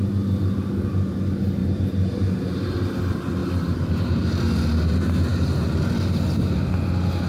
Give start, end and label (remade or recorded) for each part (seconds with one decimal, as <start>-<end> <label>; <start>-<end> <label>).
0.0-1.6 recorded; 1.6-3.0 remade; 3.0-3.4 recorded; 3.4-4.4 remade; 4.4-7.3 recorded